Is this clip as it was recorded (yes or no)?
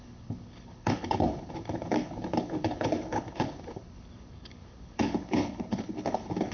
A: no